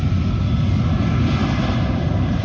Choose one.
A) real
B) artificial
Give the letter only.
A